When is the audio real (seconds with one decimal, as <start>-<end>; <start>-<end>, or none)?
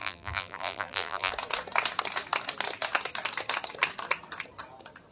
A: 1.3-5.1